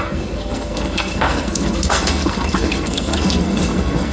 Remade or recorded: remade